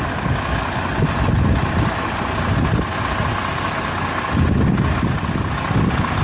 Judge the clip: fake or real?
real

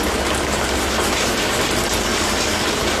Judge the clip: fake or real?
real